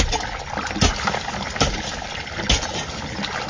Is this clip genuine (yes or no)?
yes